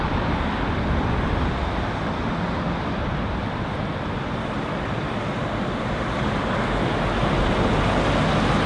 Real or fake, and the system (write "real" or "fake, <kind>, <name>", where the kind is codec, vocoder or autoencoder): real